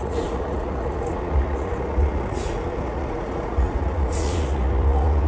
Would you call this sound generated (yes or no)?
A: yes